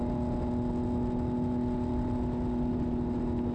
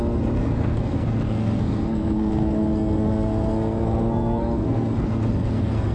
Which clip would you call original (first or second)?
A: first